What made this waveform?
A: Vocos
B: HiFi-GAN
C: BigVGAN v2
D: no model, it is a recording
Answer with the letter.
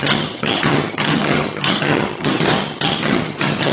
B